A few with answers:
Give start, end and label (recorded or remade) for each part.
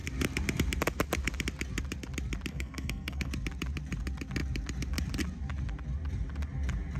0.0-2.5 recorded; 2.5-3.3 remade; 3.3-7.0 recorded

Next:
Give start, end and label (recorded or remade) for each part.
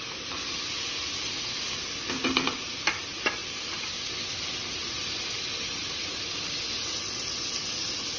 0.0-8.2 recorded